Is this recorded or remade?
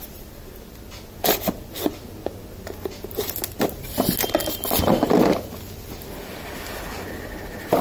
recorded